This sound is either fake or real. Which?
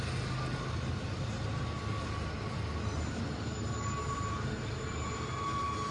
real